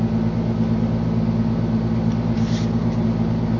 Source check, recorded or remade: recorded